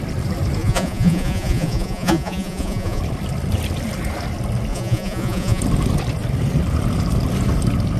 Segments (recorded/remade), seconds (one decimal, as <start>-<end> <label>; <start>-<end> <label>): 0.0-0.6 recorded; 0.6-3.0 remade; 3.0-4.7 recorded; 4.7-5.6 remade; 5.6-8.0 recorded